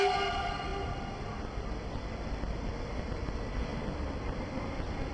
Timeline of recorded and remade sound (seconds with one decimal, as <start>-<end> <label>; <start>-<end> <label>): 0.0-5.1 recorded